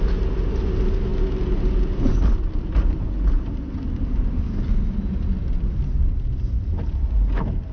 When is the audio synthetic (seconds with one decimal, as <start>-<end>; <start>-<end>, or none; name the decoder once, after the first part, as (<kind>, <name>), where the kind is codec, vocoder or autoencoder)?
none

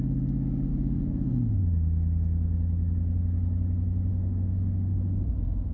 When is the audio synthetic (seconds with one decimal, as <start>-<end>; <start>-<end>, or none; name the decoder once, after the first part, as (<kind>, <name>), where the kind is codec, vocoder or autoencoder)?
0.7-1.3 (codec, SNAC); 4.1-5.0

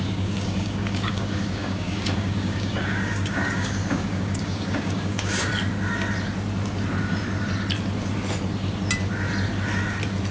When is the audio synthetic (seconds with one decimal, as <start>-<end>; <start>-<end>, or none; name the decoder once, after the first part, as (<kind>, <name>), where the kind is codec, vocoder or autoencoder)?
0.0-5.5 (codec, DAC)

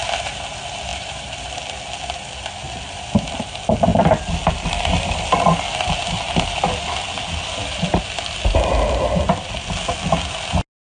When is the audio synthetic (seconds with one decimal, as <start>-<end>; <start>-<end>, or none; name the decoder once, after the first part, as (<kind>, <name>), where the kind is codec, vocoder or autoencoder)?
0.9-1.5 (vocoder, BigVGAN v2)

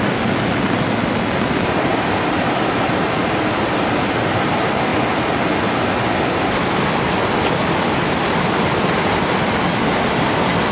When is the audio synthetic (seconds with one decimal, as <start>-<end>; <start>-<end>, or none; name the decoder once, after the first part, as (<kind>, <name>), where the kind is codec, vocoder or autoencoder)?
none